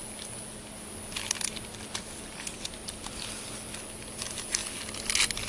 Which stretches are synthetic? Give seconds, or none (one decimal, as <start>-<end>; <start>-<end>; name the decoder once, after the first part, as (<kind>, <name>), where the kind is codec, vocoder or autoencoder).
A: none

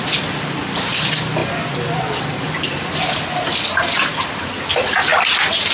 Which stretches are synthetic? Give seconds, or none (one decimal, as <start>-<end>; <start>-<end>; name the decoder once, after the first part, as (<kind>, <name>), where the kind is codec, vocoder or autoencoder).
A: none

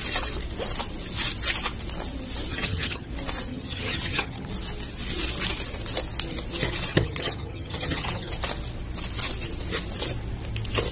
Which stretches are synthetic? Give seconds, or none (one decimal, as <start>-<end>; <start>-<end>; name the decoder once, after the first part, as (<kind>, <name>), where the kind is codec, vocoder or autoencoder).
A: 2.5-3.1 (vocoder, HiFi-GAN); 3.5-4.5; 6.9-8.3

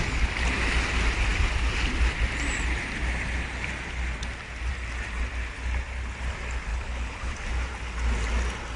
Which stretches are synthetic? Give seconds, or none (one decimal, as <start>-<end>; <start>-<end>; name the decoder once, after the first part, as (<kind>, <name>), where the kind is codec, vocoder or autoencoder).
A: 6.7-7.3 (codec, HILCodec)

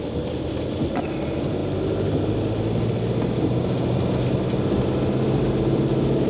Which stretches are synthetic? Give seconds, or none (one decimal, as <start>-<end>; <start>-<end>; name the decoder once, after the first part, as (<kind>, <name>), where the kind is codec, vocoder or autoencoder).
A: none

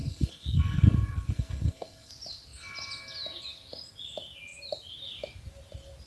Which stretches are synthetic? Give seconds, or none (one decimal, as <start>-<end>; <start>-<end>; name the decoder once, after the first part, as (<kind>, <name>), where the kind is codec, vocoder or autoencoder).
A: 0.0-2.1 (codec, SNAC)

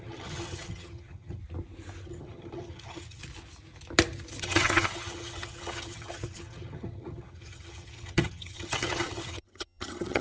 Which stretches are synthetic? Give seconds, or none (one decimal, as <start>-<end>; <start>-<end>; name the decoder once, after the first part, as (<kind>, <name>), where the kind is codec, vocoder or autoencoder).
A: 0.0-1.4 (vocoder, HiFi-GAN); 2.0-3.2; 4.4-10.2

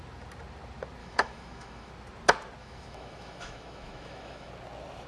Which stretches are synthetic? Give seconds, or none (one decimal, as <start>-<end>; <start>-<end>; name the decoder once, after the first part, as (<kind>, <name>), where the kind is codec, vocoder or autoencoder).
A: 1.0-1.9 (autoencoder, DAC-VAE); 2.6-4.5